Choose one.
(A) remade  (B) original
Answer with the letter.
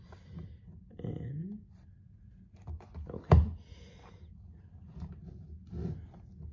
B